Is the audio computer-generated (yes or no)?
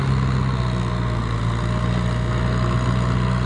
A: no